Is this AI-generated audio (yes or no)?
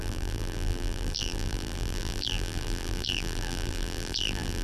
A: yes